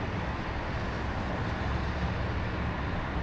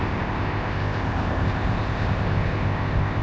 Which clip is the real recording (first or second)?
first